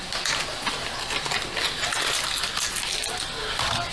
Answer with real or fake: real